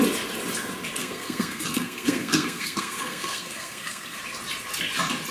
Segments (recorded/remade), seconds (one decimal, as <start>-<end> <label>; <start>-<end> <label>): 0.0-1.0 recorded; 1.0-4.2 remade; 4.2-5.3 recorded